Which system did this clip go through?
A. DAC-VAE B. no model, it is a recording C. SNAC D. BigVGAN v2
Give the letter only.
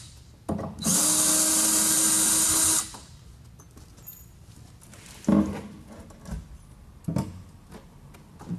B